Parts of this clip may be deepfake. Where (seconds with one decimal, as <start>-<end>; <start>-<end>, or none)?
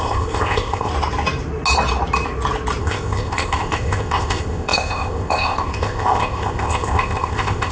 0.0-0.9; 2.8-7.7